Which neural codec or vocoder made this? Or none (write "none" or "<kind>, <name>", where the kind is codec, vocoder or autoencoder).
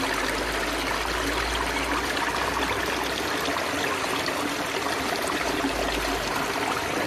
none